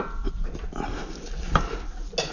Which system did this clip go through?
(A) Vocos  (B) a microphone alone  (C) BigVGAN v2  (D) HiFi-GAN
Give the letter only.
B